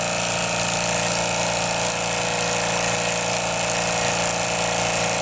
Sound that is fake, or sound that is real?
real